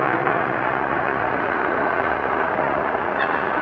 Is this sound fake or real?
fake